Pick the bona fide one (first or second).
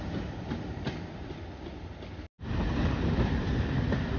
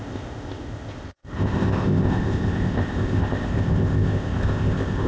first